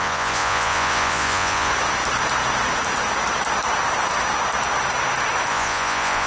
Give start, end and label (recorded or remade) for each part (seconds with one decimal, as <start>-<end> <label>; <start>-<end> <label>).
0.0-1.7 remade; 1.7-5.5 recorded; 5.5-6.3 remade